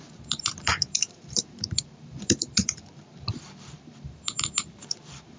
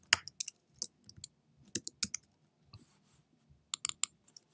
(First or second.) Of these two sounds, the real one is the second